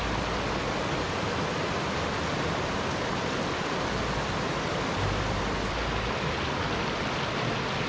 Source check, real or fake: real